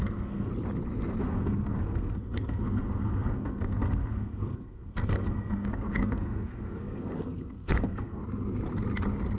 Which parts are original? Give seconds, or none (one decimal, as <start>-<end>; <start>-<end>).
0.5-1.2; 8.2-9.4